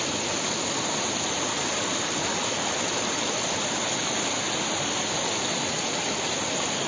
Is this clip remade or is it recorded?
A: recorded